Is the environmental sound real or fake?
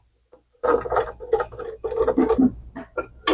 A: real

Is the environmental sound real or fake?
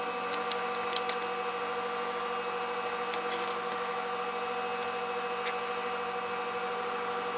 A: real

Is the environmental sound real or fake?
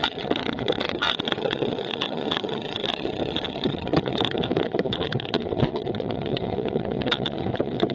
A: fake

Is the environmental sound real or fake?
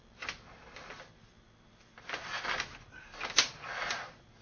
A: real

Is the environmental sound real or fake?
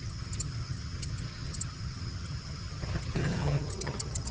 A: fake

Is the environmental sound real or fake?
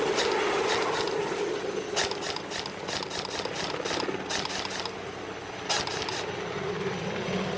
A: real